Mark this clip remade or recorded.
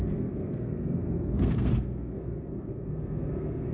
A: remade